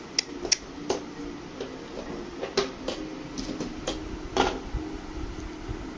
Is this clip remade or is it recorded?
recorded